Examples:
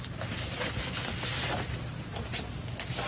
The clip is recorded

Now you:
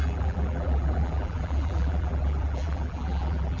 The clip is remade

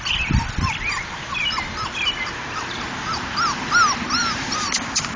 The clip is remade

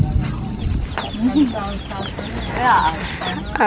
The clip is recorded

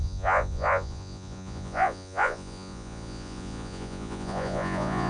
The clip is remade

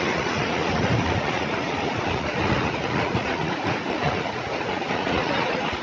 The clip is remade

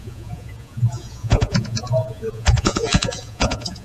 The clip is remade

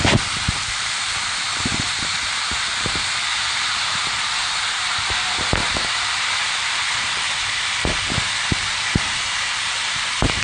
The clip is remade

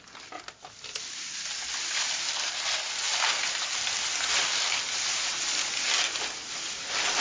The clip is recorded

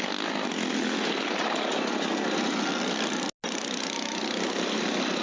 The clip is recorded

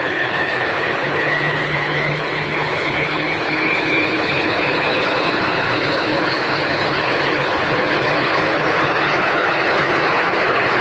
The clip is remade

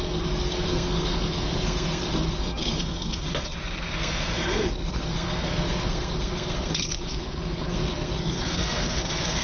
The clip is remade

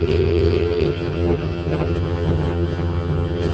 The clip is remade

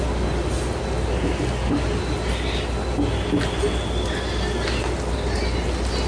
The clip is recorded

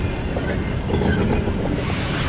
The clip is recorded